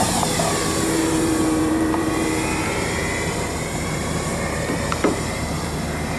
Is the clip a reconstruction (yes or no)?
yes